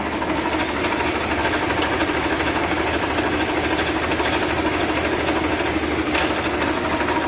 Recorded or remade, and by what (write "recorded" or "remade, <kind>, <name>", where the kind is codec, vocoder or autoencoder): recorded